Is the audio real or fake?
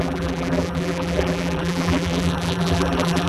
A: fake